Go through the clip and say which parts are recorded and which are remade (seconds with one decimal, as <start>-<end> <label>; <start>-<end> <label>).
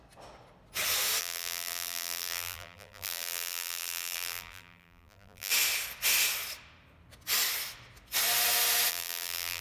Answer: 0.0-1.2 recorded; 1.2-5.5 remade; 5.5-8.9 recorded; 8.9-9.6 remade